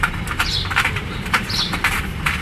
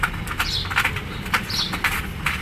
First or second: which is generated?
first